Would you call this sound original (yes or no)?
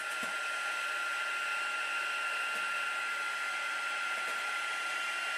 yes